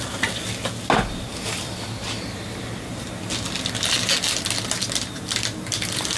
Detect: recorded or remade recorded